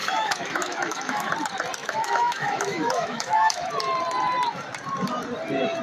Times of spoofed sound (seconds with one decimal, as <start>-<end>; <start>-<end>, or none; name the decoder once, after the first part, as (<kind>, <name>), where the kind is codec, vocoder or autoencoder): 0.0-1.3 (autoencoder, DAC-VAE); 1.8-3.7